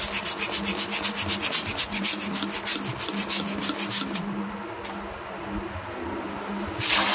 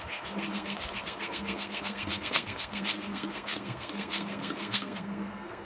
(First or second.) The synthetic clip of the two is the second